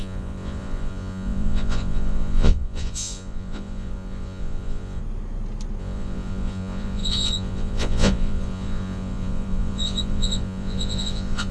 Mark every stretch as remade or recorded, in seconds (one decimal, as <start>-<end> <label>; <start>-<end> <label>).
0.0-5.0 remade; 5.0-5.8 recorded; 5.8-11.5 remade